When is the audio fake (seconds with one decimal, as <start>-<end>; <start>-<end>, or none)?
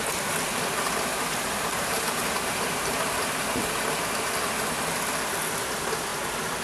1.1-3.7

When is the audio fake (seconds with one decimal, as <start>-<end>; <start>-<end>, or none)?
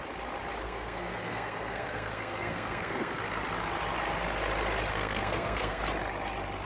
0.6-3.2; 4.9-5.8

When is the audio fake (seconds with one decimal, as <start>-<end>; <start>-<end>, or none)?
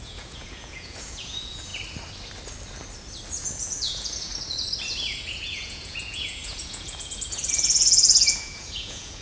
0.0-1.7; 3.3-4.3; 5.2-9.2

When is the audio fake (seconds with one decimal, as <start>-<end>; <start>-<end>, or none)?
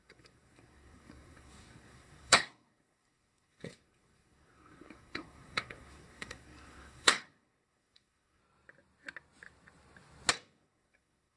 0.0-8.4; 10.3-11.4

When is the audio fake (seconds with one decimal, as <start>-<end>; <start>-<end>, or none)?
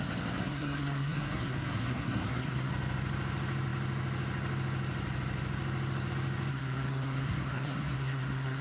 0.4-2.7; 6.5-8.6